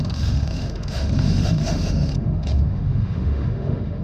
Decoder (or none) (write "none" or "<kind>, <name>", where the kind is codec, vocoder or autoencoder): autoencoder, DAC-VAE